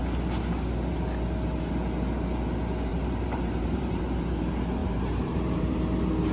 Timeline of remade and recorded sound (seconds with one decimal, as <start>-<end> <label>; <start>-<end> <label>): 0.0-2.9 recorded; 2.9-4.0 remade; 4.0-4.8 recorded; 4.8-5.7 remade; 5.7-6.3 recorded